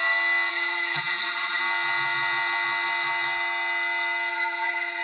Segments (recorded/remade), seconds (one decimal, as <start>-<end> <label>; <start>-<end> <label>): 0.0-0.5 recorded; 0.5-1.6 remade; 1.6-4.3 recorded; 4.3-5.0 remade